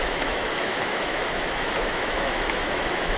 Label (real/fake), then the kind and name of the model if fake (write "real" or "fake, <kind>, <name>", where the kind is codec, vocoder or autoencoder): fake, autoencoder, DAC-VAE